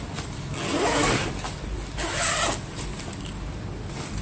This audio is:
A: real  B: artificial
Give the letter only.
A